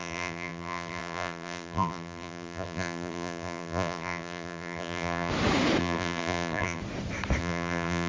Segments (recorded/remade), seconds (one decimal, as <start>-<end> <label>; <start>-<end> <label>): 0.0-5.3 remade; 5.3-5.8 recorded; 5.8-6.8 remade; 6.8-7.4 recorded; 7.4-8.1 remade